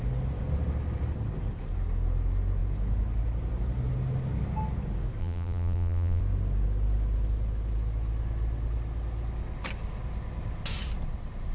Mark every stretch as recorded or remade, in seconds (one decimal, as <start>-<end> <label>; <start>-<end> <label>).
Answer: 0.0-5.2 recorded; 5.2-6.2 remade; 6.2-11.5 recorded